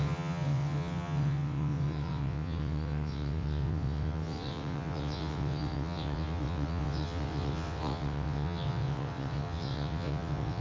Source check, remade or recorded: remade